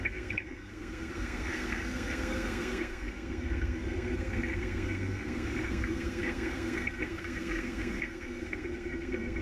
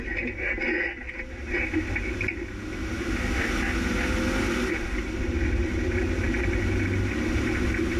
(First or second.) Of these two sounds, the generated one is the first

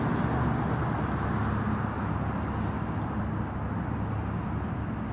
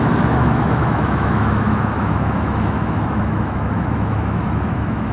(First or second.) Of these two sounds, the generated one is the second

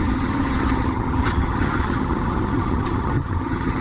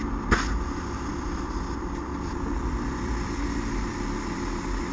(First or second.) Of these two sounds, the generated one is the first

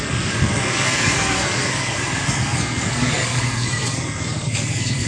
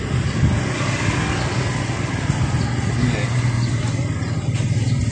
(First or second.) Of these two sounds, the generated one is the first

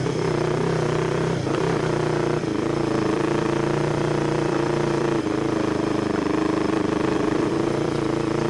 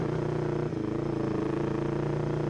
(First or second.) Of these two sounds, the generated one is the first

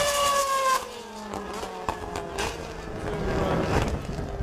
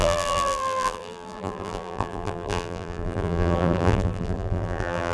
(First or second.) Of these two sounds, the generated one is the second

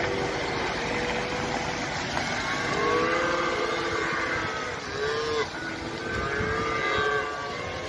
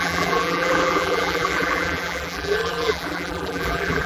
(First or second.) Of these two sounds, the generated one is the second